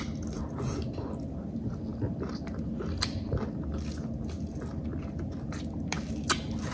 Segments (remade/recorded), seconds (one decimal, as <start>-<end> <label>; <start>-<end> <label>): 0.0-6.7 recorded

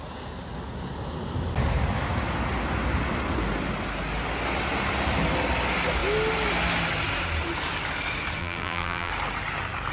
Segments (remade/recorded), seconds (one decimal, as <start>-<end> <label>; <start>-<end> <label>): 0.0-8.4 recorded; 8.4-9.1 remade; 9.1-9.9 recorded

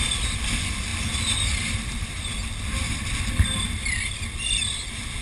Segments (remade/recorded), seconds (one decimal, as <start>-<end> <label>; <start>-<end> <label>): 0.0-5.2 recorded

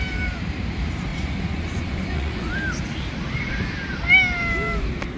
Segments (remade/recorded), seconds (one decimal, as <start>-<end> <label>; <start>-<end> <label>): 0.0-1.1 recorded; 1.1-2.5 remade; 2.5-5.2 recorded